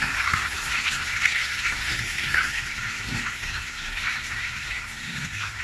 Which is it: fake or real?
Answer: fake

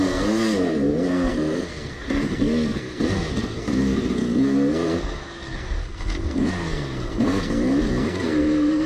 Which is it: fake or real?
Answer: fake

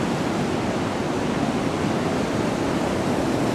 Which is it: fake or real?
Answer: real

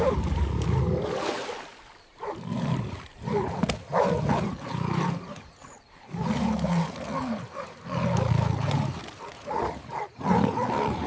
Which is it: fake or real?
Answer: real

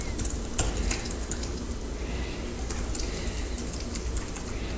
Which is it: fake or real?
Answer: real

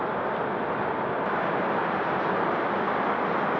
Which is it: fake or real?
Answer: real